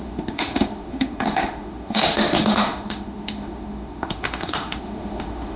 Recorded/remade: remade